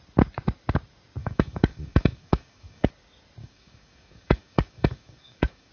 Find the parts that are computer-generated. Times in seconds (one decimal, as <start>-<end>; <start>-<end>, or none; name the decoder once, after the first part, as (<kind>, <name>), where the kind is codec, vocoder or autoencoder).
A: 1.2-2.9 (codec, DAC); 3.4-5.7